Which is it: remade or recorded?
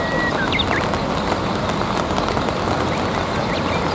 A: recorded